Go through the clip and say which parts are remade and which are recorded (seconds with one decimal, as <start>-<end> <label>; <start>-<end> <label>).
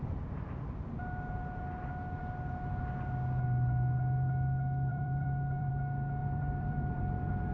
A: 0.0-4.9 recorded; 4.9-5.7 remade; 5.7-6.2 recorded; 6.2-7.0 remade; 7.0-7.5 recorded